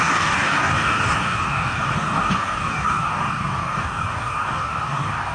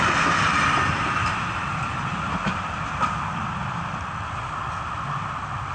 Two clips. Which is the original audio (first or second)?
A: second